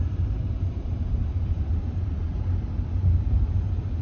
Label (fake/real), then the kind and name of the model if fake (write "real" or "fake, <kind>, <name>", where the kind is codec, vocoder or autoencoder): fake, vocoder, BigVGAN v2